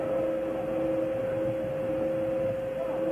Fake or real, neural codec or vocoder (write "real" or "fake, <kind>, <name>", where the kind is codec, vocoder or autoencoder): real